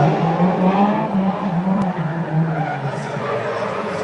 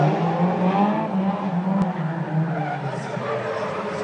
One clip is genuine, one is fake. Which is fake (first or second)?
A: first